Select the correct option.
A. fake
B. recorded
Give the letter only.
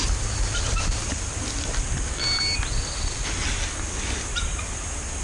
B